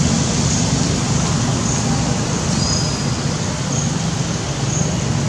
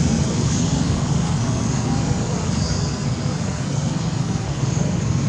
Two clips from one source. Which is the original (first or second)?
first